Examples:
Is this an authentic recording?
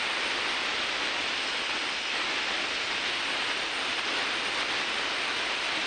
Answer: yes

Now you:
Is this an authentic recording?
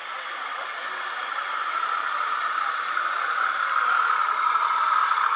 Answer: yes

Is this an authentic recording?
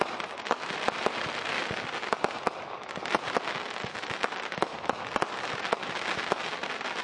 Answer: yes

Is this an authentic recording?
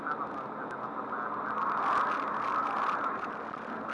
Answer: yes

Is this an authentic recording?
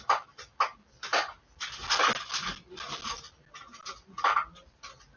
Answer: yes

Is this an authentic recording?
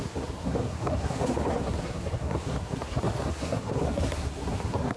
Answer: no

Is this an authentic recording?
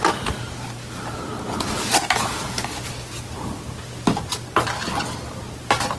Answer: yes